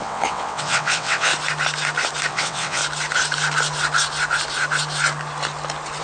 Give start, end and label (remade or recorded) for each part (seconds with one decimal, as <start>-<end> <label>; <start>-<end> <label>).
0.0-1.3 remade; 1.3-2.3 recorded; 2.3-2.8 remade; 2.8-6.0 recorded